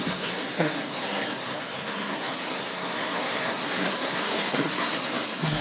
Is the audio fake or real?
fake